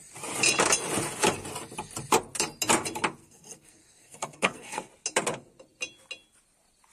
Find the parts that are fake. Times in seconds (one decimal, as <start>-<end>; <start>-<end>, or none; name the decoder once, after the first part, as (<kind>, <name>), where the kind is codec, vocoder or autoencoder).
3.2-4.9 (codec, SNAC)